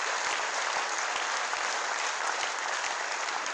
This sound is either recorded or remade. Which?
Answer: recorded